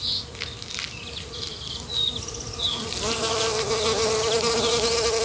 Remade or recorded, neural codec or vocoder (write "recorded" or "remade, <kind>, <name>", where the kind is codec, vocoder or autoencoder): recorded